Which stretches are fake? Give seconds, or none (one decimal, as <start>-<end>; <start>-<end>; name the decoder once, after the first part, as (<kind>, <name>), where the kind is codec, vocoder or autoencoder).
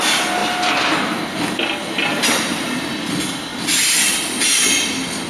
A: none